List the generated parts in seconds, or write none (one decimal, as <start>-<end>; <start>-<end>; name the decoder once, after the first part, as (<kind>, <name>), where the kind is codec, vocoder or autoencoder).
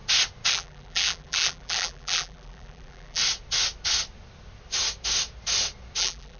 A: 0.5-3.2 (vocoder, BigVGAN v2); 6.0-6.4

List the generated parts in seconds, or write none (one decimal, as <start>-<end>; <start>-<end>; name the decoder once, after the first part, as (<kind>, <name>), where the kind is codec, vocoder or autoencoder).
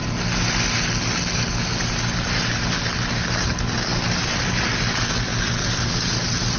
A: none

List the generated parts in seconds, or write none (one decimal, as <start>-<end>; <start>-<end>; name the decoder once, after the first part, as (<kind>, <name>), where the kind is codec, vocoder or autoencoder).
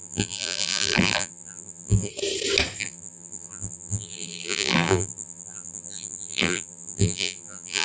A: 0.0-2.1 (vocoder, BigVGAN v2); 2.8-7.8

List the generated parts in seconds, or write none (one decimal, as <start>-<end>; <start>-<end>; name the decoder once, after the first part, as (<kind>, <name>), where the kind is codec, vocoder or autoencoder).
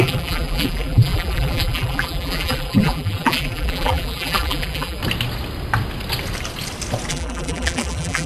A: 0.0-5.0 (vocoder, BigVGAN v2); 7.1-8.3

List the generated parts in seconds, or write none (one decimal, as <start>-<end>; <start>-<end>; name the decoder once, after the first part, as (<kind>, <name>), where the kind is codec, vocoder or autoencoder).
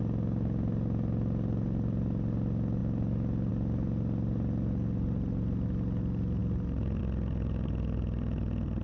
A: none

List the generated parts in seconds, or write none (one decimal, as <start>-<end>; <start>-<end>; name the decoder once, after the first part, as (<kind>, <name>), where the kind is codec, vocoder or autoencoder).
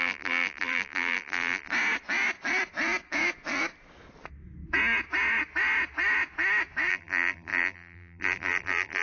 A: 0.0-1.7 (vocoder, BigVGAN v2); 6.9-9.0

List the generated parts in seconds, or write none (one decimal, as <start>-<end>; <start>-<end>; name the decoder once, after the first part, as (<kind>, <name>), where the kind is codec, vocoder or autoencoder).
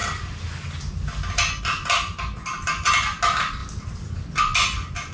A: none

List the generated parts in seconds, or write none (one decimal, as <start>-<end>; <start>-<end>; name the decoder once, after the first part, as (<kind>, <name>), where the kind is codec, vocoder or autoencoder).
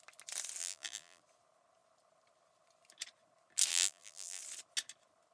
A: 0.6-1.2 (vocoder, BigVGAN v2); 3.7-4.4